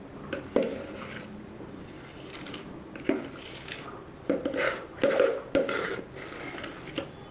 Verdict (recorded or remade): remade